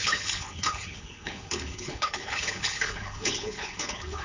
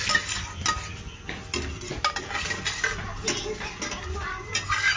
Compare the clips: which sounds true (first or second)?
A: second